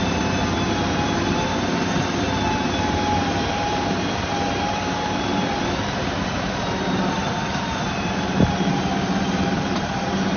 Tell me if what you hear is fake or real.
fake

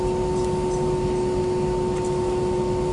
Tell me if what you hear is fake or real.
real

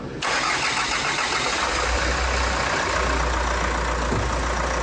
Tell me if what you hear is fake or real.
real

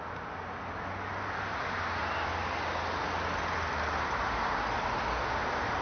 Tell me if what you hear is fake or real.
real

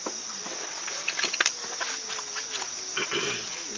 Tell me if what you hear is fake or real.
real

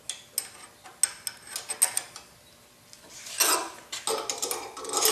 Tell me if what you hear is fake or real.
real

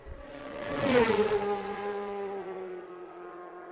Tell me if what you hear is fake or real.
fake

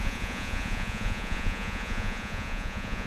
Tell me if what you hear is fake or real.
fake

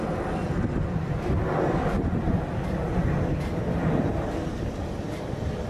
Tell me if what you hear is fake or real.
real